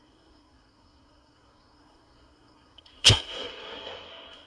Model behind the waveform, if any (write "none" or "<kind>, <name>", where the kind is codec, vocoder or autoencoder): codec, SNAC